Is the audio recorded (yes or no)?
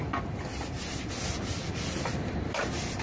yes